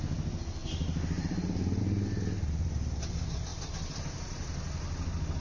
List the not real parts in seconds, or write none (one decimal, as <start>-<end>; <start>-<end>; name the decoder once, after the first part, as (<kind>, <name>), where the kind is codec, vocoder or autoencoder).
none